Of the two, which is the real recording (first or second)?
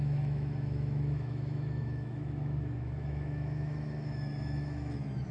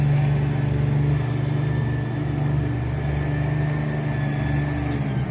second